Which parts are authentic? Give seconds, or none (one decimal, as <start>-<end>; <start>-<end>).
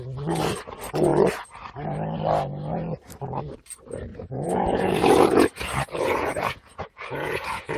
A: 0.0-4.1